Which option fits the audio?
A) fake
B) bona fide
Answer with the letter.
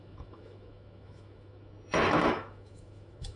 A